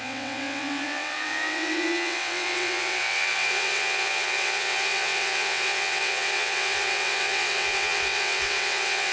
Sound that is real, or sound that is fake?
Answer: fake